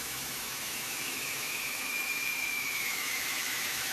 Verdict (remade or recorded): remade